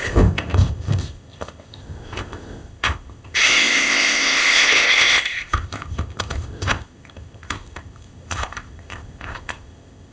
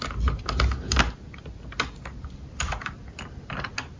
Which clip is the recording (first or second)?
second